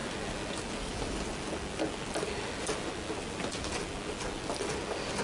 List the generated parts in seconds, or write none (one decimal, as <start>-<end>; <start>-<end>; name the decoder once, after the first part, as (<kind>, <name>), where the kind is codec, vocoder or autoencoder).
none

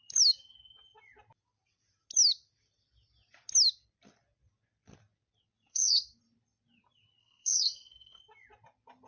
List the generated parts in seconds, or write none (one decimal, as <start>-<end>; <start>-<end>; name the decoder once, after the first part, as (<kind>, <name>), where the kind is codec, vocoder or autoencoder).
5.7-6.2 (codec, SNAC); 7.2-8.2

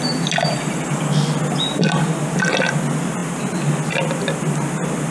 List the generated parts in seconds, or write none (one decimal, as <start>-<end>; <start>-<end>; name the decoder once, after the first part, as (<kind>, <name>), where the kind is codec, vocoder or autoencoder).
none

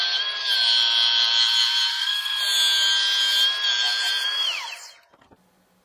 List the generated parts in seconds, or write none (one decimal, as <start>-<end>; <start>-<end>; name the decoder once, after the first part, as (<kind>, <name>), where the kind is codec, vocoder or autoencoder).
1.9-2.4 (codec, SNAC)

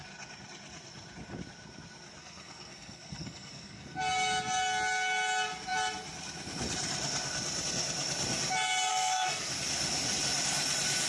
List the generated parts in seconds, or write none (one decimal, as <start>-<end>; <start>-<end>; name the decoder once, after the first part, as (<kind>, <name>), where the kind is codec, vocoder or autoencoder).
2.2-4.0 (codec, SNAC); 8.9-9.5

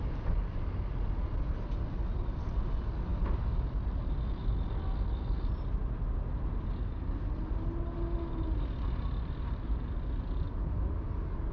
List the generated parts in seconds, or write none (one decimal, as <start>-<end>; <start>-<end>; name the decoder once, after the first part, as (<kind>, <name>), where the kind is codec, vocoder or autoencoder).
none

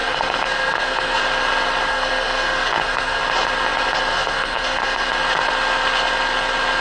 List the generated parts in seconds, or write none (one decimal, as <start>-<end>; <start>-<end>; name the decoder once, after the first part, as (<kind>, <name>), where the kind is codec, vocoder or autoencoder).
0.0-1.2 (codec, SNAC); 1.9-3.2; 4.1-5.1

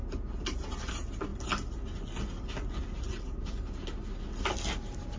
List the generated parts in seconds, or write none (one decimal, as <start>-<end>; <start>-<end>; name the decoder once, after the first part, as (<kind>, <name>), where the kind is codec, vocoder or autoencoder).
none